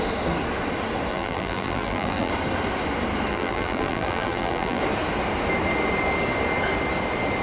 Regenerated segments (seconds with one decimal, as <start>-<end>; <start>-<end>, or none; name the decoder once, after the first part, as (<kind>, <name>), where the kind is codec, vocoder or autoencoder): 1.1-2.3 (vocoder, BigVGAN v2); 3.3-4.8